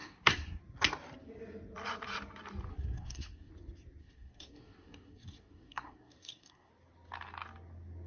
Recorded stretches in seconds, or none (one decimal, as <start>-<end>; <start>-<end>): 0.6-2.7; 3.5-4.0; 6.7-8.1